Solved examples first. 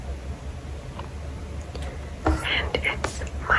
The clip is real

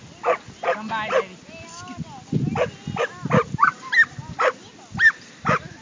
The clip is real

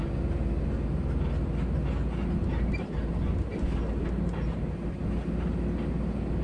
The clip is real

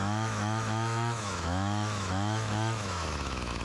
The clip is fake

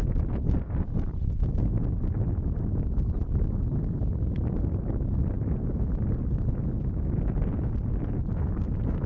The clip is real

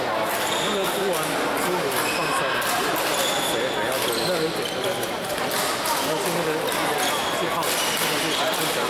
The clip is real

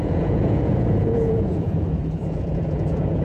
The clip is fake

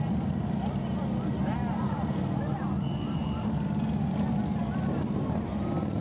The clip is real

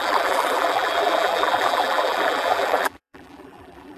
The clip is fake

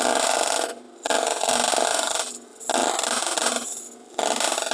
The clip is real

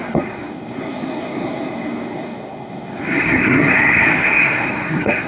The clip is fake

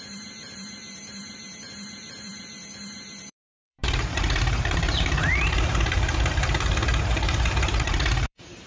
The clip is fake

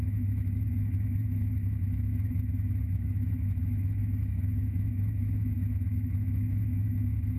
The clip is fake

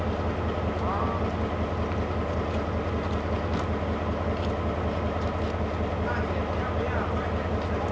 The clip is real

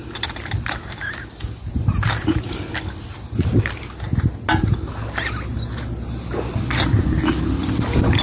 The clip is real